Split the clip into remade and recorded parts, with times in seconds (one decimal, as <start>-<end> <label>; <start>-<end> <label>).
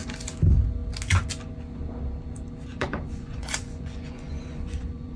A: 0.0-2.7 recorded; 2.7-5.2 remade